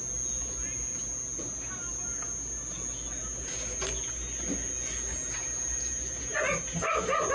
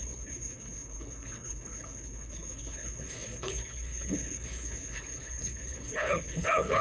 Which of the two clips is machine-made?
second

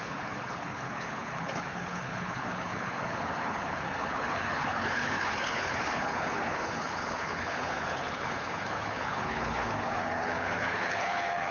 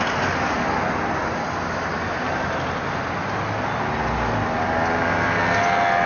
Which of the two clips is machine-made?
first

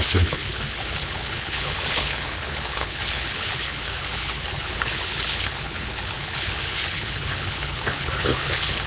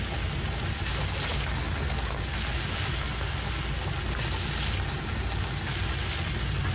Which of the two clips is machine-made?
first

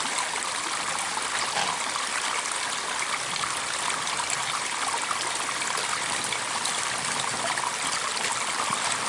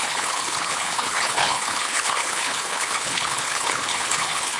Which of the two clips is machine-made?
second